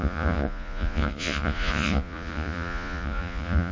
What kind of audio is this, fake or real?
fake